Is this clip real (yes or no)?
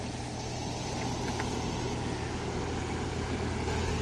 yes